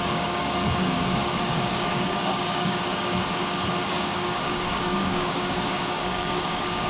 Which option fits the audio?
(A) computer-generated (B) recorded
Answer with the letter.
A